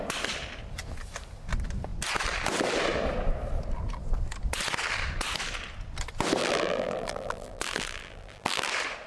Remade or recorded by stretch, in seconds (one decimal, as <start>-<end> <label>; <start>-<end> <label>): 0.0-6.4 recorded; 6.4-8.7 remade; 8.7-9.1 recorded

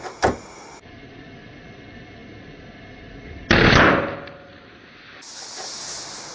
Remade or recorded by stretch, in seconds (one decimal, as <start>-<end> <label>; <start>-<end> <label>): 0.0-6.3 recorded

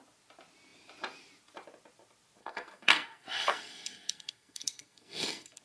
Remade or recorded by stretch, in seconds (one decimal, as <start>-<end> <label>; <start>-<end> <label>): 0.0-2.4 recorded; 2.4-5.6 remade

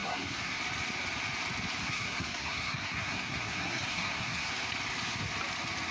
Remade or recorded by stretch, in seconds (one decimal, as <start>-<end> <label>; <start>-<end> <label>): 0.0-0.6 remade; 0.6-1.8 recorded; 1.8-4.5 remade; 4.5-5.9 recorded

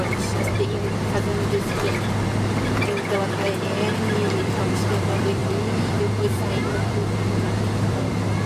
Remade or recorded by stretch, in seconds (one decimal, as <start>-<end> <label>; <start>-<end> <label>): 0.0-1.3 remade; 1.3-4.0 recorded; 4.0-8.5 remade